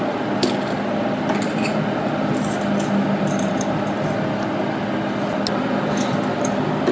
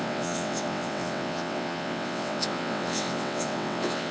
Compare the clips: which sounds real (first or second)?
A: first